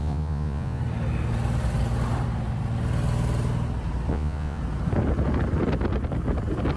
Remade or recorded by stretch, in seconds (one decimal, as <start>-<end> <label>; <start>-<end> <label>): 0.0-0.8 remade; 0.8-4.1 recorded; 4.1-4.6 remade; 4.6-6.8 recorded